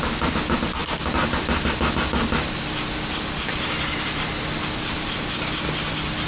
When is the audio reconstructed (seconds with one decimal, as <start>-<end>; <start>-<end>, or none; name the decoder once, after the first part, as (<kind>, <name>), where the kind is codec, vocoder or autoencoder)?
none